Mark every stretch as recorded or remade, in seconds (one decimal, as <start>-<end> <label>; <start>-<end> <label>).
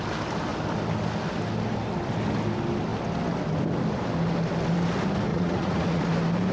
0.0-5.3 recorded; 5.3-6.1 remade; 6.1-6.5 recorded